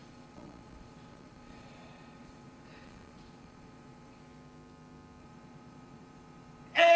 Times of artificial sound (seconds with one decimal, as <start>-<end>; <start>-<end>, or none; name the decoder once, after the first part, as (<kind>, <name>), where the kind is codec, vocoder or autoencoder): 0.0-4.2 (vocoder, Vocos); 5.2-7.0